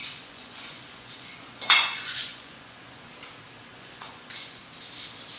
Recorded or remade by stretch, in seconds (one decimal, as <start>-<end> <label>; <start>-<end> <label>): 0.0-3.1 remade; 3.1-3.7 recorded; 3.7-4.6 remade; 4.6-5.4 recorded